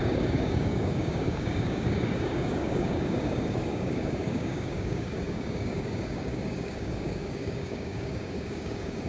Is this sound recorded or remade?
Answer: remade